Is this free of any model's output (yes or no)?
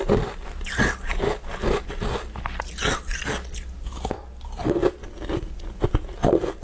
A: yes